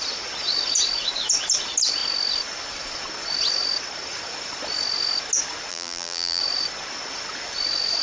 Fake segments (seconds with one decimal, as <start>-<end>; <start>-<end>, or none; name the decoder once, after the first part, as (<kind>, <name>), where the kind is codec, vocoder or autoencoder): 5.7-6.4 (vocoder, BigVGAN v2)